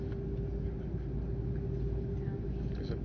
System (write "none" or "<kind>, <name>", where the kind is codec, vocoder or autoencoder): none